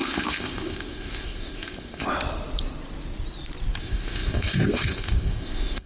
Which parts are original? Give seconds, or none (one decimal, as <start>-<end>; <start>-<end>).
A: 2.1-3.8